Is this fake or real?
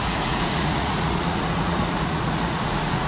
fake